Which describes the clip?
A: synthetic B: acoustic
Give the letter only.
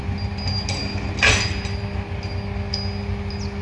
B